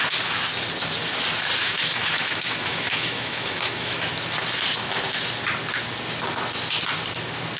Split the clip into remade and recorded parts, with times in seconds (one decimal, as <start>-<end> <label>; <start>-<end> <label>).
0.0-1.6 recorded; 1.6-4.1 remade; 4.1-7.6 recorded